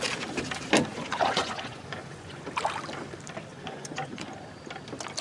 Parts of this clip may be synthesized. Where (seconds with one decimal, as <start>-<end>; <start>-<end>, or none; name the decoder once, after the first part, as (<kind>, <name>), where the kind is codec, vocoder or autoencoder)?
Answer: 0.9-2.5 (vocoder, Vocos); 3.5-4.3